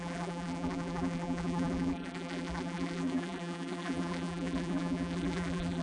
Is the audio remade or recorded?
remade